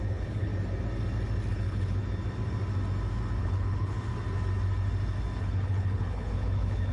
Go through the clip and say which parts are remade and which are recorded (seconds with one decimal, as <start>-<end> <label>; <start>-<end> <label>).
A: 0.0-0.5 remade; 0.5-1.5 recorded; 1.5-2.0 remade; 2.0-3.4 recorded; 3.4-4.1 remade; 4.1-5.4 recorded; 5.4-6.9 remade